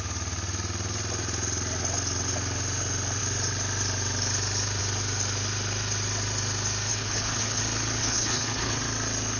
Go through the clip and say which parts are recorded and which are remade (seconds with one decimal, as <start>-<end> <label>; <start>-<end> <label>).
0.0-6.9 recorded; 6.9-7.6 remade; 7.6-8.0 recorded; 8.0-8.8 remade; 8.8-9.4 recorded

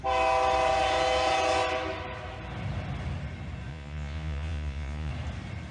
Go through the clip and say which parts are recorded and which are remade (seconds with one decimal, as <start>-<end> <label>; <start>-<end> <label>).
0.0-3.7 recorded; 3.7-5.1 remade; 5.1-5.7 recorded

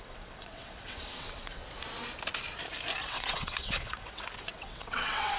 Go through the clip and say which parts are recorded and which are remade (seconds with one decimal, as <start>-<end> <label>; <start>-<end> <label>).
0.0-1.6 remade; 1.6-3.1 recorded; 3.1-5.4 remade